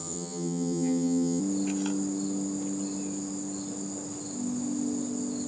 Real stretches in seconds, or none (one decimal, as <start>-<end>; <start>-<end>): 1.4-5.5